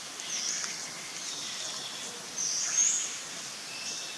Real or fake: real